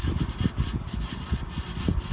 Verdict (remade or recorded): recorded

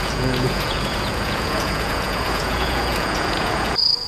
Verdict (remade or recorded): remade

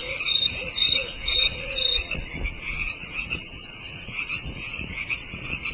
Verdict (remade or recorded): remade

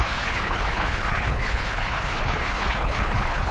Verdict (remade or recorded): remade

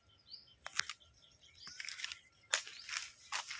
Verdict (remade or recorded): recorded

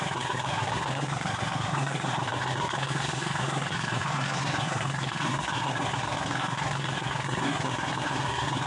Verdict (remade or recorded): remade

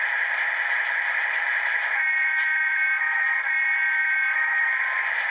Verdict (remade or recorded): remade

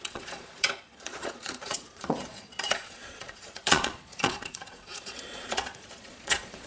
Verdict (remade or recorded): remade